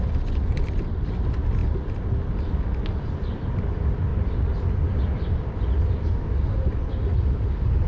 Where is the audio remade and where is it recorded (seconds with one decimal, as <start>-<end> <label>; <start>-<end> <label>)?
0.0-7.9 recorded